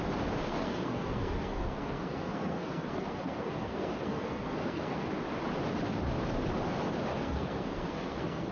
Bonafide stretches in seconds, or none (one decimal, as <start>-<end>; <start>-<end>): 0.0-0.4; 5.1-7.1